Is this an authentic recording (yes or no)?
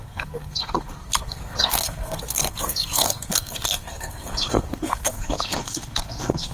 no